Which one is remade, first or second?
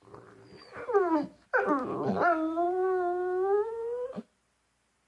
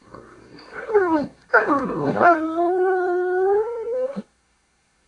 second